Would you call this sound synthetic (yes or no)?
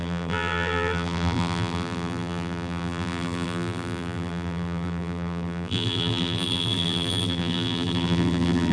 yes